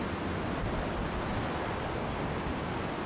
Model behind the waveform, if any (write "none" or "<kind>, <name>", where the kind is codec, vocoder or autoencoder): none